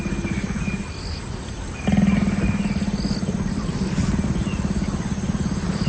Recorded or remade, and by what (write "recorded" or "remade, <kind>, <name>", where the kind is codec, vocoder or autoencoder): recorded